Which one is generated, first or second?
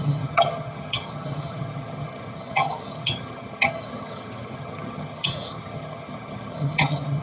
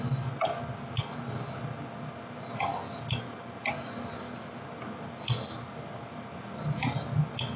first